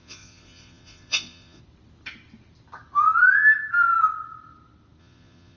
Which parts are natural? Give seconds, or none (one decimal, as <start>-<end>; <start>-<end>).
1.6-5.0